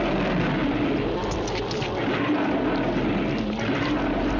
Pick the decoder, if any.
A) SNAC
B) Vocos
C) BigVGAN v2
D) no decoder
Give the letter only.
D